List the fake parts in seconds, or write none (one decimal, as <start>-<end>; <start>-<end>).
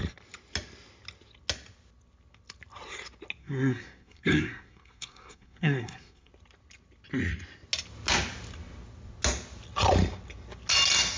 3.4-6.3